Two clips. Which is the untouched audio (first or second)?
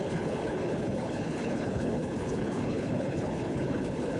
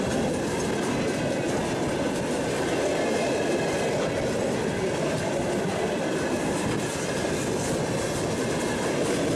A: second